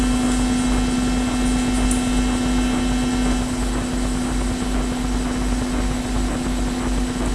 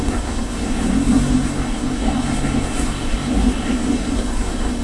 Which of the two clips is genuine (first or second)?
first